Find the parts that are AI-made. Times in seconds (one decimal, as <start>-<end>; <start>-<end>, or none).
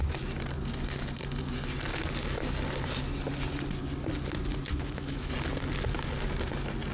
4.7-5.3